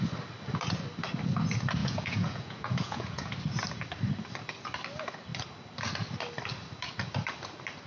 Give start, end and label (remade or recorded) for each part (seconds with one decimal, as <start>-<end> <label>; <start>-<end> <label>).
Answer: 0.0-1.8 recorded; 1.8-3.3 remade; 3.3-7.9 recorded